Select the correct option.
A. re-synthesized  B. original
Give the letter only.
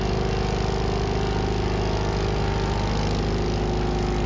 B